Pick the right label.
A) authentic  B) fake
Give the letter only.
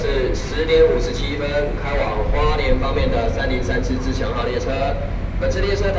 A